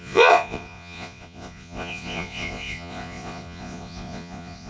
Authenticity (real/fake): fake